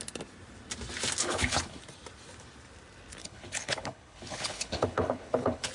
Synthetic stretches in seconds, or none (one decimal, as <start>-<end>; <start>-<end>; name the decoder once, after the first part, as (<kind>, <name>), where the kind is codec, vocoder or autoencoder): 1.2-1.8 (codec, HILCodec); 3.2-5.7